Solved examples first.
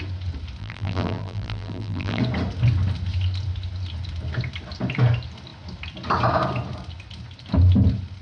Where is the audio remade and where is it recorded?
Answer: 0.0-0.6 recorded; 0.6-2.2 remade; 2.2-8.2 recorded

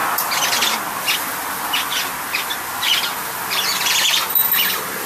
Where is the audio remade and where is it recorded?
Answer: 0.0-5.1 recorded